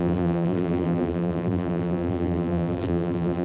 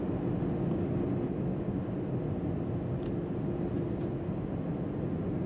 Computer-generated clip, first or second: first